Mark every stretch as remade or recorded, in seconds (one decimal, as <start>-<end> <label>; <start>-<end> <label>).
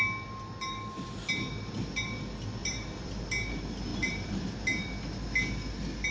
0.0-2.6 recorded; 2.6-3.3 remade; 3.3-3.9 recorded; 3.9-4.5 remade; 4.5-6.1 recorded